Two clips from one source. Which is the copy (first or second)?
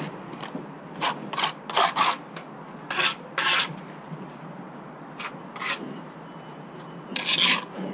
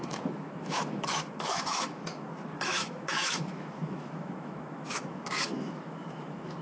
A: second